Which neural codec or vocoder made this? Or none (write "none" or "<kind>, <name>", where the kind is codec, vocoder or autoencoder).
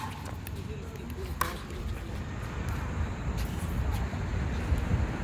none